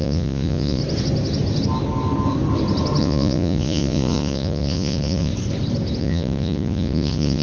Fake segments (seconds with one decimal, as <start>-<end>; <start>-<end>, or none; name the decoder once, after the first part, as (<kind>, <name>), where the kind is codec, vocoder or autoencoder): 0.0-0.8 (vocoder, Vocos); 3.0-5.3; 6.0-7.4